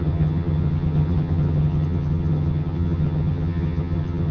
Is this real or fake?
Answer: fake